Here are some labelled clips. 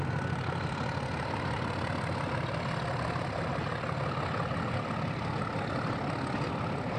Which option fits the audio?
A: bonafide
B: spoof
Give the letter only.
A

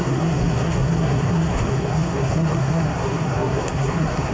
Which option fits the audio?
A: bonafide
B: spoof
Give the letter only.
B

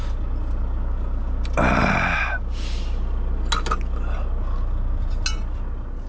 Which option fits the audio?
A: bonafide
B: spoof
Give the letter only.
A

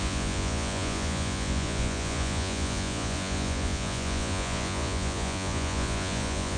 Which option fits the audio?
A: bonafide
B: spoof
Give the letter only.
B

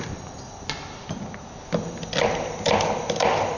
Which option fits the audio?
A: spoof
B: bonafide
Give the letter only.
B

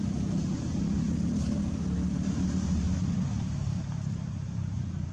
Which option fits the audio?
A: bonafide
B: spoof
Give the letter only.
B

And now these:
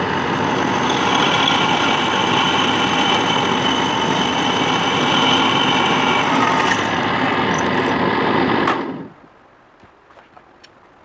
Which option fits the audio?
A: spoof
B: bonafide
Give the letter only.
B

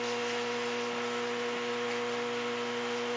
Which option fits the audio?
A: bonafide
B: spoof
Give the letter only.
A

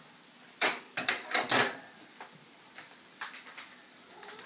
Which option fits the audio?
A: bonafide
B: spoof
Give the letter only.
B